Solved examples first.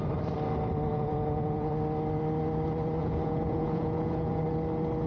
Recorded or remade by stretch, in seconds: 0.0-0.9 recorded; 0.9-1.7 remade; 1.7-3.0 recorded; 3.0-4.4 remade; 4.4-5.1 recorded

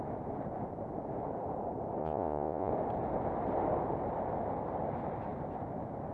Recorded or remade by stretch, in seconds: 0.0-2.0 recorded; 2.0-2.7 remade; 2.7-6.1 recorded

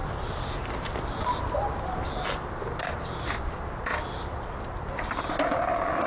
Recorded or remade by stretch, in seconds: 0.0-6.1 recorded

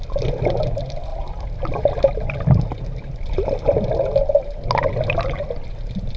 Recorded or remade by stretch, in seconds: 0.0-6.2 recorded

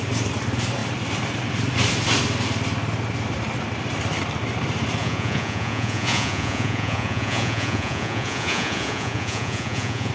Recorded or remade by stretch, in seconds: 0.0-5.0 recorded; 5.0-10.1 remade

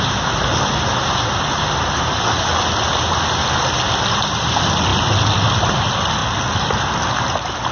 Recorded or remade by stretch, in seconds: 0.0-7.7 recorded